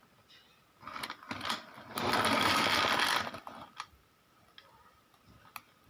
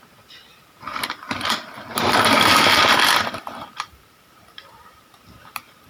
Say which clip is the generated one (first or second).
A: second